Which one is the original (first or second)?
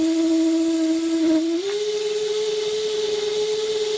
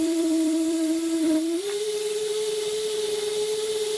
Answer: first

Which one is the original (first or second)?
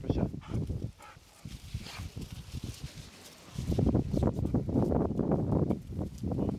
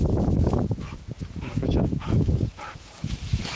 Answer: first